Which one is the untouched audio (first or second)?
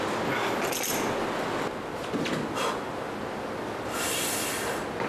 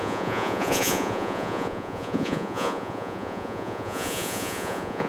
first